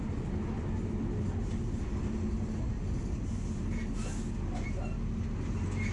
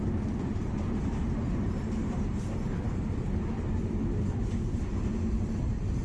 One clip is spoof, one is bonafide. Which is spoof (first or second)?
second